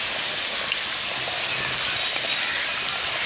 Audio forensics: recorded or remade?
recorded